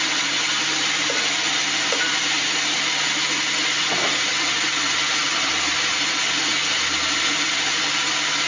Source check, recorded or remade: recorded